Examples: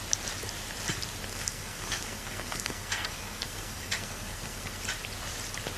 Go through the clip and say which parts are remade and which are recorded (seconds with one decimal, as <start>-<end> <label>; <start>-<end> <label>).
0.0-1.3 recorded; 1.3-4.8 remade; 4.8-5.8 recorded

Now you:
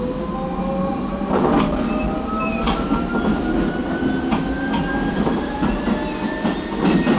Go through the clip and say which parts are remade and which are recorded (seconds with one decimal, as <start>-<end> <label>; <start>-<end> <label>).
0.0-7.2 recorded

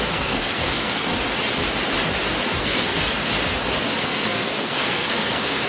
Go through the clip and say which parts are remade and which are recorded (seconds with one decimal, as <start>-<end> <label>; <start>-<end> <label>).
0.0-1.1 remade; 1.1-2.6 recorded; 2.6-3.2 remade; 3.2-4.0 recorded; 4.0-5.7 remade

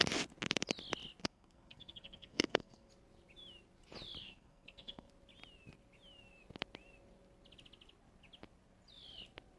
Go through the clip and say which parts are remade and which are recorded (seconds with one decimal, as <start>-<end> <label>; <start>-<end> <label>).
0.0-1.2 recorded; 1.2-2.9 remade; 2.9-4.2 recorded; 4.2-5.1 remade; 5.1-9.6 recorded